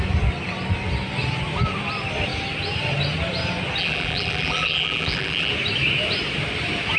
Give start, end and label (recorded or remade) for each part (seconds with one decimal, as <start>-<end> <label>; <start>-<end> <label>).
0.0-3.8 recorded; 3.8-5.5 remade; 5.5-7.0 recorded